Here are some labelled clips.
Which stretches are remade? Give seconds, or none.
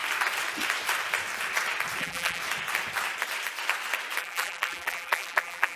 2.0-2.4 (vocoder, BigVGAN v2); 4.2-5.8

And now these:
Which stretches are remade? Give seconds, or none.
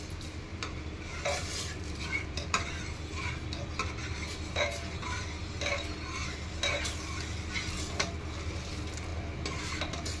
0.5-2.7 (vocoder, BigVGAN v2); 6.2-7.1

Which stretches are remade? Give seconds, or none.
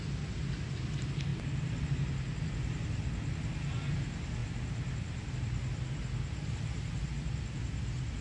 none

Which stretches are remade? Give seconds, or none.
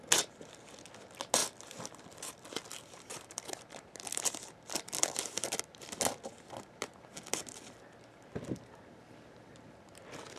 1.4-5.6 (vocoder, BigVGAN v2)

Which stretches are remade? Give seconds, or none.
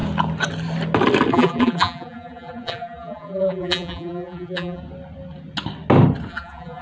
1.3-4.8 (vocoder, BigVGAN v2); 6.3-6.8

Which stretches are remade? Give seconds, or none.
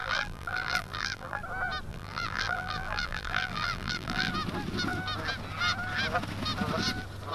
0.0-1.4 (vocoder, BigVGAN v2); 1.9-4.3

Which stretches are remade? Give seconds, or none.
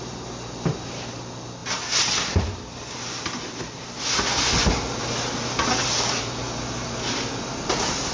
none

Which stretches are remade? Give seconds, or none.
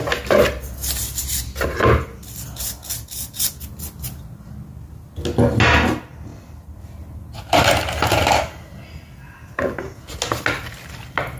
6.3-7.7 (vocoder, BigVGAN v2)